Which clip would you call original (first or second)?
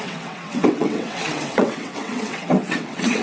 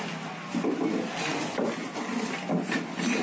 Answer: second